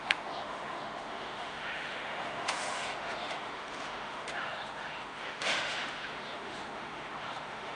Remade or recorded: remade